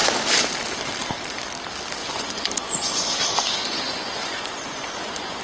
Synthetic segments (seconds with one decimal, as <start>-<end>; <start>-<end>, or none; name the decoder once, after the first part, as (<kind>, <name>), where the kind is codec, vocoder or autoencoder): 2.0-5.4 (vocoder, Vocos)